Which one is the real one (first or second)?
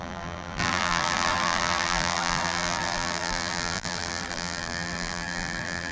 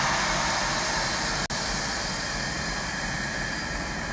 second